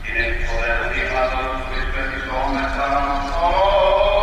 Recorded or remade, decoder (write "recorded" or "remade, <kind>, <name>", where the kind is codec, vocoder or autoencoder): remade, vocoder, BigVGAN v2